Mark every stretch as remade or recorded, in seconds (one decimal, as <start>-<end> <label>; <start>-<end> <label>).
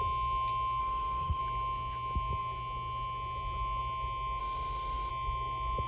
0.0-0.8 recorded; 0.8-1.4 remade; 1.4-4.4 recorded; 4.4-5.1 remade; 5.1-5.9 recorded